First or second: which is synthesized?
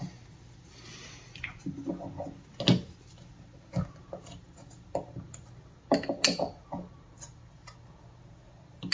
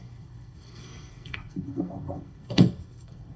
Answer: second